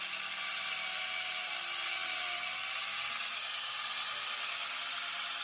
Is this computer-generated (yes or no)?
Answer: no